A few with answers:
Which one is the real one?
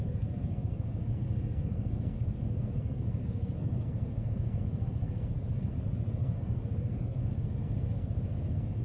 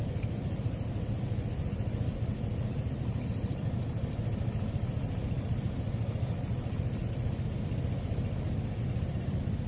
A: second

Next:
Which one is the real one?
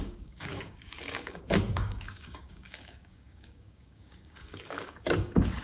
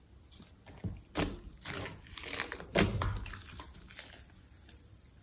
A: second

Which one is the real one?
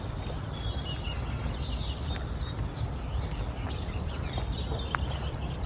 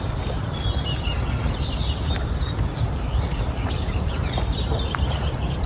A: first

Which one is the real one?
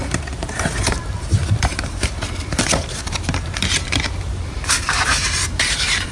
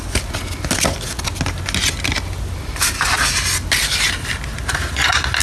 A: second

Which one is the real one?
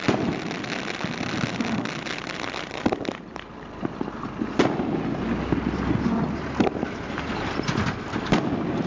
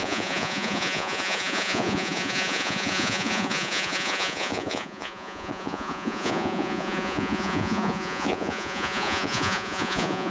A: first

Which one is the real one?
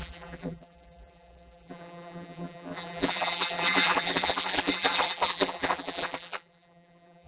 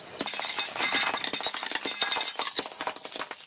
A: second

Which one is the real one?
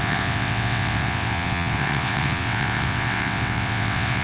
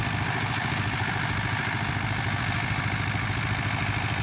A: second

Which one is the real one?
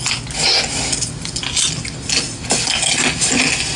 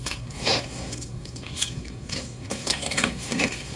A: first